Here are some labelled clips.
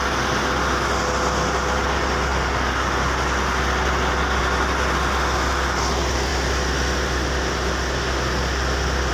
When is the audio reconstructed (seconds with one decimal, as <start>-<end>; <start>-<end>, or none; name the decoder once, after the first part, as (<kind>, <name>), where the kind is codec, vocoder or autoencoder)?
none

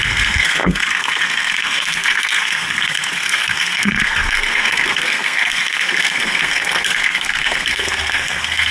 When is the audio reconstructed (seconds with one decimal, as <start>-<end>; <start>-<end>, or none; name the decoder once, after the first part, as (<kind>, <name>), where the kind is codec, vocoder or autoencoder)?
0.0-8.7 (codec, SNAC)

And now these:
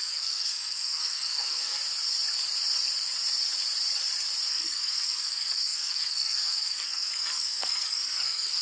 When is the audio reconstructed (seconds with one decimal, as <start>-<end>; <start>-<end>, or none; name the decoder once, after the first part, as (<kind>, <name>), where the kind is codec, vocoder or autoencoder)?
0.0-1.8 (codec, SNAC); 4.5-8.6

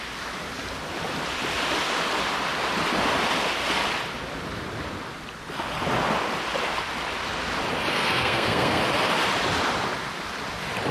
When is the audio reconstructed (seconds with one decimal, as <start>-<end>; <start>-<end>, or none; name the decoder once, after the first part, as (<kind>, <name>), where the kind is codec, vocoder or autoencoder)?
7.9-8.8 (codec, SNAC)